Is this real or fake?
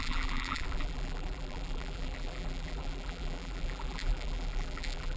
fake